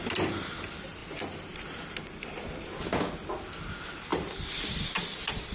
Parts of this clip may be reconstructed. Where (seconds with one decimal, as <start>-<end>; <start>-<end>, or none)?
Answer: none